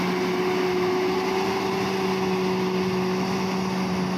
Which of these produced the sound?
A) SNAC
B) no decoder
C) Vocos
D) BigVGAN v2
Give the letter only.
B